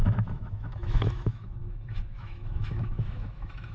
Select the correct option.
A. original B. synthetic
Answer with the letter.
B